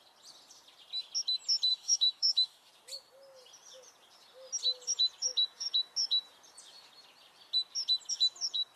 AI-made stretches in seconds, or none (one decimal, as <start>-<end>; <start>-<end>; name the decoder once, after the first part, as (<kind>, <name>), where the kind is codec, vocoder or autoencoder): 1.7-2.7 (autoencoder, DAC-VAE)